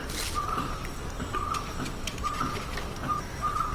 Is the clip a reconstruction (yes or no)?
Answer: no